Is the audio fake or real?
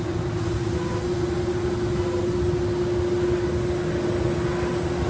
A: real